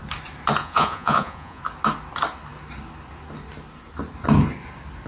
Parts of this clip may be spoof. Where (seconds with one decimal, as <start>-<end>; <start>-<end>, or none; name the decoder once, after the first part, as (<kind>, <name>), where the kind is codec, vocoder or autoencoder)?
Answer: 0.6-1.6 (vocoder, Vocos)